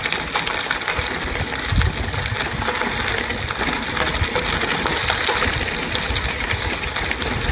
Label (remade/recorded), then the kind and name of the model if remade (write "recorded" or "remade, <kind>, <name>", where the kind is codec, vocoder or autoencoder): recorded